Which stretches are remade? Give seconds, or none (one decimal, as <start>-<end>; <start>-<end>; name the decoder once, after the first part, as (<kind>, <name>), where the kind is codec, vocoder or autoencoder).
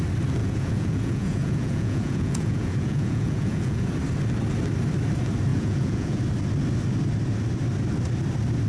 0.4-3.9 (vocoder, Vocos); 5.5-6.2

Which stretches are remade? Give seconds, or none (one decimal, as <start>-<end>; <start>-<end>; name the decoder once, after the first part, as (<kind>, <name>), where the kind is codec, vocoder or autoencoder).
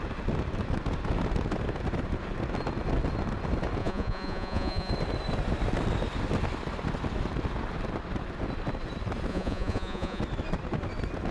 3.8-4.9 (vocoder, Vocos); 9.3-10.2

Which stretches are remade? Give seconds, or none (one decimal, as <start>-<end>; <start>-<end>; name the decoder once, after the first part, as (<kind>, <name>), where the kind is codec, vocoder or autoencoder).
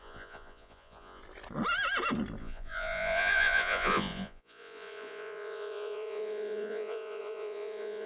0.0-1.2 (vocoder, Vocos); 2.4-8.1